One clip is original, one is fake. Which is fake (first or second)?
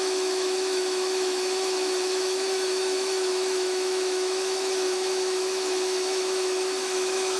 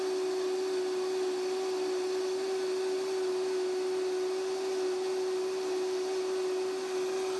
first